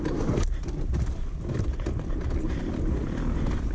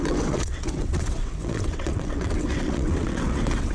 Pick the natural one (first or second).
first